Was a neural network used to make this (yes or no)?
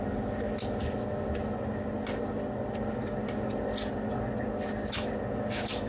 no